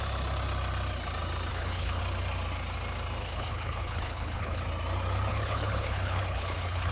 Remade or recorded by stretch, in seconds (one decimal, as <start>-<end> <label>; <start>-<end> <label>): 0.0-1.5 recorded; 1.5-2.0 remade; 2.0-3.2 recorded; 3.2-4.6 remade; 4.6-5.3 recorded; 5.3-6.9 remade